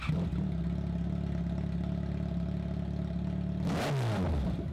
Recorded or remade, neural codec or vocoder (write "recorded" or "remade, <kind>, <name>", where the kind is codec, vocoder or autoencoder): recorded